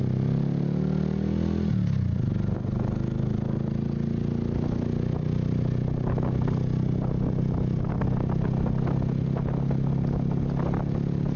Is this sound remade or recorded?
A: recorded